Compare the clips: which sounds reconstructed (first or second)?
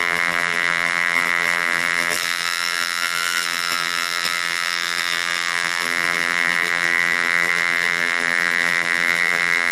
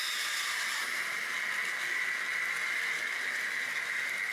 first